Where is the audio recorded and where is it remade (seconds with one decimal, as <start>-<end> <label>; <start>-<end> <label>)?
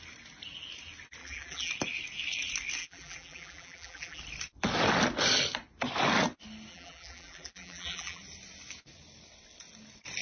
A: 0.0-1.2 recorded; 1.2-1.7 remade; 1.7-2.8 recorded; 2.8-4.2 remade; 4.2-6.7 recorded; 6.7-8.2 remade; 8.2-10.2 recorded